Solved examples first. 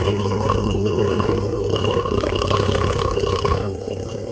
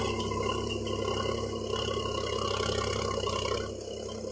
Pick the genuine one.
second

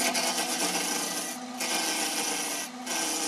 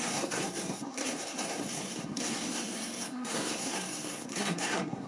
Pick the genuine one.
first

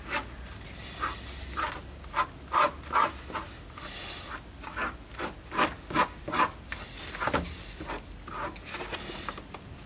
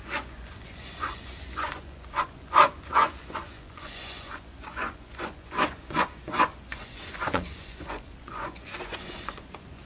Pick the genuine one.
first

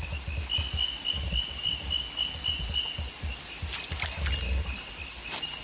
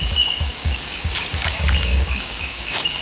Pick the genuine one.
first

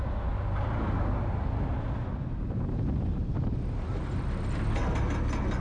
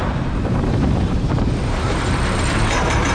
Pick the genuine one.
first